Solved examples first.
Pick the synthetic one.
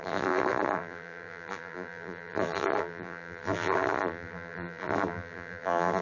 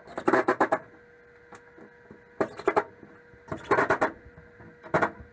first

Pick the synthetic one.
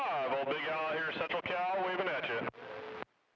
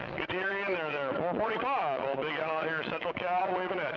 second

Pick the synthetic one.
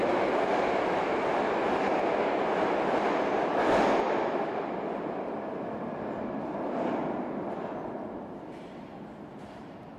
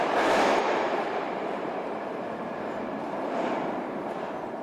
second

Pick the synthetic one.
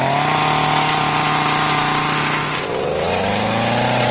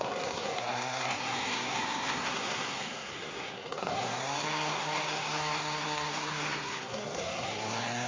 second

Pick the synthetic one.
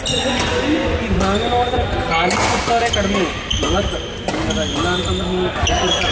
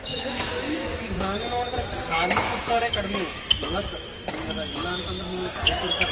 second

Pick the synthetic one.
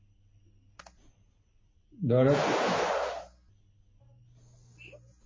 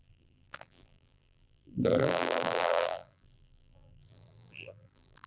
second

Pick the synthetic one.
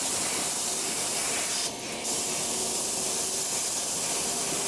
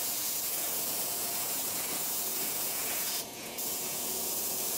second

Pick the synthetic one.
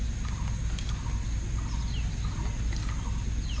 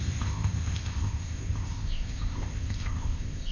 second